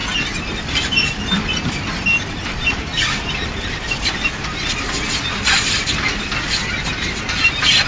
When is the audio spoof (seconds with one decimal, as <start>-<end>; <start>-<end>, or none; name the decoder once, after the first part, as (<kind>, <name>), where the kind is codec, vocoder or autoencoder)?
none